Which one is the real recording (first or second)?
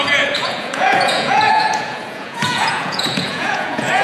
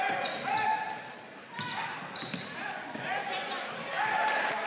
second